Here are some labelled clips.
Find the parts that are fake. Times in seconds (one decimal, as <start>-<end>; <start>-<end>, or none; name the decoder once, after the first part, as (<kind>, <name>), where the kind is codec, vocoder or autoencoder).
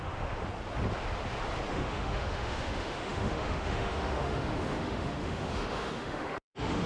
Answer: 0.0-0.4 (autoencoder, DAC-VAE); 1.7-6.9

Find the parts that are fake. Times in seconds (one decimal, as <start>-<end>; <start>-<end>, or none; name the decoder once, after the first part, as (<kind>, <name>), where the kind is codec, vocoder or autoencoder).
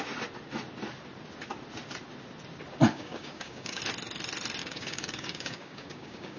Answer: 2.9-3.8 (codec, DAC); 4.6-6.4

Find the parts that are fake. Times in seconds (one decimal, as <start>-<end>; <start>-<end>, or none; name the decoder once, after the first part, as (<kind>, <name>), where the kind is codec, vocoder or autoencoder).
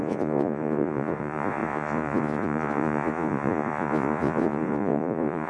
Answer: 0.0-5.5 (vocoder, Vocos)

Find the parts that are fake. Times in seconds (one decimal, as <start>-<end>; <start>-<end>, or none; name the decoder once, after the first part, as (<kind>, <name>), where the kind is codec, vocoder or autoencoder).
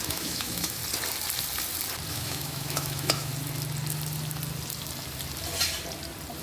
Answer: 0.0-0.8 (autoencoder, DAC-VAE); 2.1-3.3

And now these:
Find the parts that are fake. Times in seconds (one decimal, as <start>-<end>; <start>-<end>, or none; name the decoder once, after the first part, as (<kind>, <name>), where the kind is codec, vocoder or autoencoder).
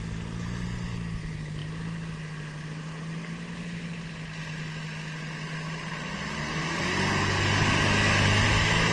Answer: none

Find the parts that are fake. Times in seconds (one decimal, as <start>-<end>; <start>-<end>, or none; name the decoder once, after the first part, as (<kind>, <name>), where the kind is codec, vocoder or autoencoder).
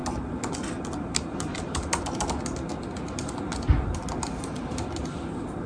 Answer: none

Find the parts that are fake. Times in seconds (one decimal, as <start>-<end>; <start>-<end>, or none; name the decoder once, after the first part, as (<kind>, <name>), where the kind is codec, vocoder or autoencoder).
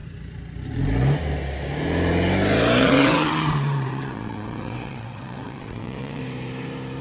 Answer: 2.8-6.2 (vocoder, WaveNeXt)